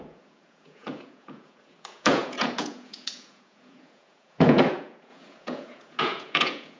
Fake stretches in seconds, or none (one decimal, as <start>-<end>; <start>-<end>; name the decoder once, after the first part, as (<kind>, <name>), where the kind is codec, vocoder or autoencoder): 0.0-6.8 (vocoder, Vocos)